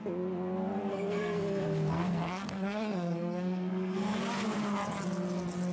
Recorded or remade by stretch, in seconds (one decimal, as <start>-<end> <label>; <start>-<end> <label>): 0.0-0.8 recorded; 0.8-4.2 remade; 4.2-5.7 recorded